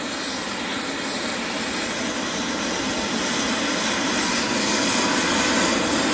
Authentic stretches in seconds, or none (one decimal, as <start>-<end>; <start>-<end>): 0.0-6.1

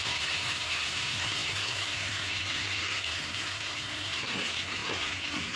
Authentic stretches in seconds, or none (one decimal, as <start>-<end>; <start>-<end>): none